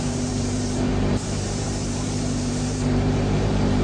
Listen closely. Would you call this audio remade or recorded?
remade